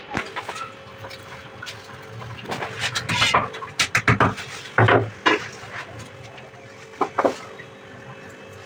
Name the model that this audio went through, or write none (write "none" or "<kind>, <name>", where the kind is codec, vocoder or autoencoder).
none